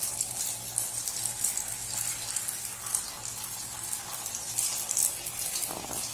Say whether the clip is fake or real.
real